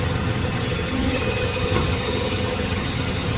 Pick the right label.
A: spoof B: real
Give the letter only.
A